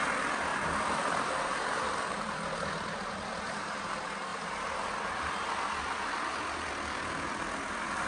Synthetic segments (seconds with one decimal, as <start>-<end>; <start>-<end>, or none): 0.5-3.8